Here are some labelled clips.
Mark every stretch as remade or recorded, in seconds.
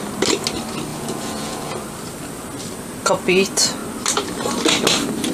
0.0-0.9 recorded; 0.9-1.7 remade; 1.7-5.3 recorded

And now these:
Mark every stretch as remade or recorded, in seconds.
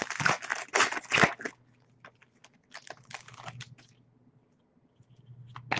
0.0-2.2 recorded; 2.2-2.8 remade; 2.8-5.8 recorded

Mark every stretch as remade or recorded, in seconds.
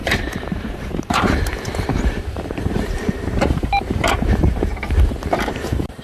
0.0-4.7 remade; 4.7-5.5 recorded; 5.5-6.0 remade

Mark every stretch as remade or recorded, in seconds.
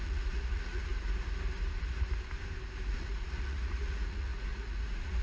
0.0-0.9 remade; 0.9-2.9 recorded; 2.9-5.2 remade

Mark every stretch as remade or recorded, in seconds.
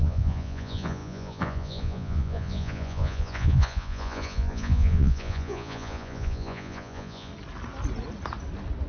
0.0-7.3 remade; 7.3-8.9 recorded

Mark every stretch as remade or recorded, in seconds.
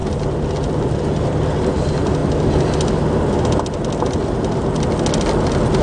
0.0-0.7 recorded; 0.7-2.2 remade; 2.2-5.8 recorded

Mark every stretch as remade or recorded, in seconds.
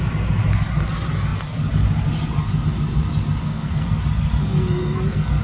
0.0-3.4 recorded; 3.4-4.0 remade; 4.0-4.4 recorded; 4.4-5.4 remade